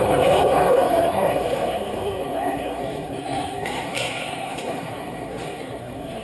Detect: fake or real fake